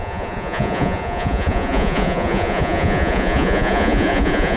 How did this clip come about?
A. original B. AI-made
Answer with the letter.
B